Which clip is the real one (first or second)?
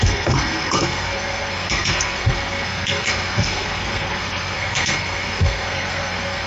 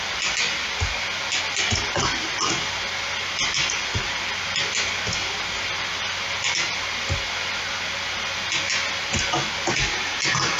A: second